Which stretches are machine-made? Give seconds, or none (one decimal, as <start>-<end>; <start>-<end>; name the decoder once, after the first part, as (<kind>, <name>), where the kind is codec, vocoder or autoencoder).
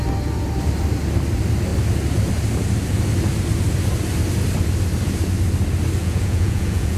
6.0-7.0 (vocoder, Vocos)